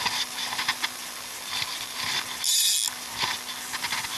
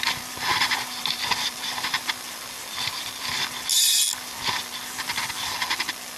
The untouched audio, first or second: first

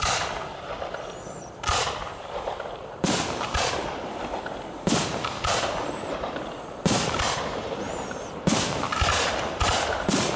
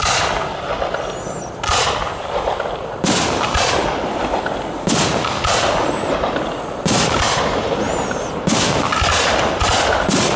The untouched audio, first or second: second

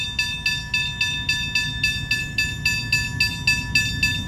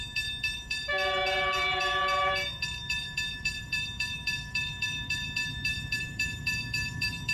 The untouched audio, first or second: first